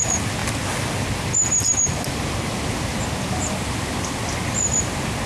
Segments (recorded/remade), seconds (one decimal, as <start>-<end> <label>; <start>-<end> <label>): 0.0-5.3 recorded